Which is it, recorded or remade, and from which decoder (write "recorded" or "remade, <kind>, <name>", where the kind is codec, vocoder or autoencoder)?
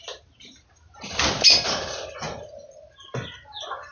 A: recorded